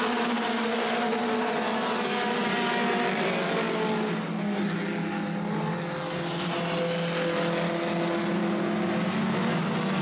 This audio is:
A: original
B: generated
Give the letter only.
A